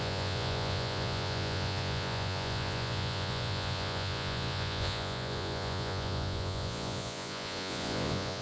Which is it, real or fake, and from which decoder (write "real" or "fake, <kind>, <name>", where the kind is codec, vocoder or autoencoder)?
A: fake, vocoder, Vocos